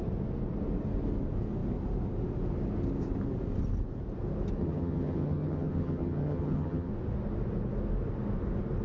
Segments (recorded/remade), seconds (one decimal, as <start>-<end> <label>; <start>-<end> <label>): 0.0-4.6 recorded; 4.6-6.9 remade; 6.9-8.8 recorded